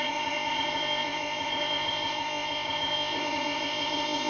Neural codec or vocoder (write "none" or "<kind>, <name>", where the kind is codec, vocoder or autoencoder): codec, ZipCodec